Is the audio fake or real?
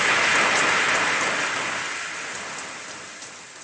real